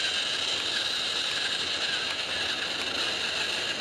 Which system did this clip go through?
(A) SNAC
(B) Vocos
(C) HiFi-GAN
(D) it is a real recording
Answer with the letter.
D